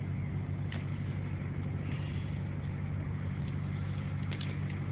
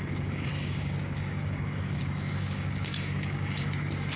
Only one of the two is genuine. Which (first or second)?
first